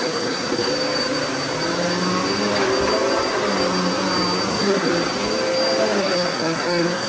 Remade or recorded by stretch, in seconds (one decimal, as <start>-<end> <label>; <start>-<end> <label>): 0.0-0.7 remade; 0.7-4.5 recorded; 4.5-4.9 remade; 4.9-6.0 recorded; 6.0-7.1 remade